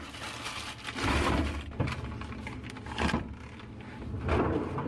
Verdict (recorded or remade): recorded